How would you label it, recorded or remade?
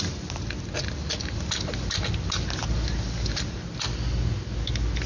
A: recorded